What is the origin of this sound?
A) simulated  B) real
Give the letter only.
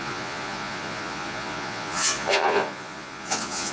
A